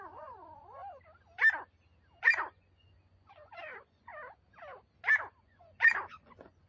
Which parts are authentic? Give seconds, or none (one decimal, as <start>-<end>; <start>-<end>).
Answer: 0.8-2.2; 4.1-5.4